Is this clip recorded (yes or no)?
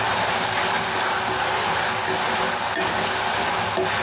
yes